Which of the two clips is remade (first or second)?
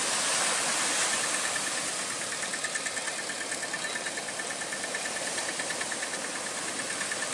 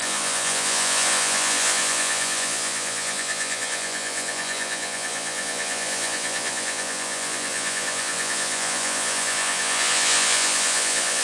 second